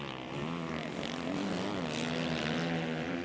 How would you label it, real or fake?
real